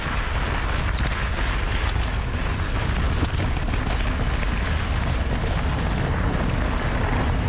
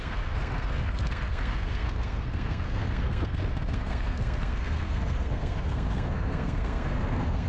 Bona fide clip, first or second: first